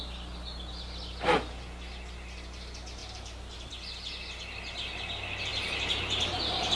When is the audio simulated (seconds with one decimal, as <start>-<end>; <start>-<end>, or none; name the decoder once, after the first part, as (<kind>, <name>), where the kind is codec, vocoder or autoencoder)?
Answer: 3.0-3.7 (vocoder, BigVGAN v2); 5.5-6.7